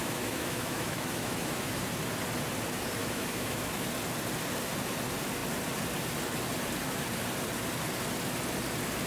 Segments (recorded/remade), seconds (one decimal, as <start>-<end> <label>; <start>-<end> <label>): 0.0-1.7 remade; 1.7-3.0 recorded; 3.0-3.9 remade; 3.9-9.1 recorded